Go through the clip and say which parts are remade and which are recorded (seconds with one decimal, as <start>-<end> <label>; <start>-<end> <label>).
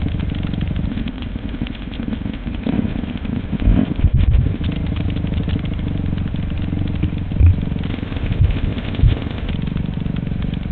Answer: 0.0-0.9 recorded; 0.9-4.6 remade; 4.6-7.9 recorded; 7.9-9.5 remade; 9.5-10.7 recorded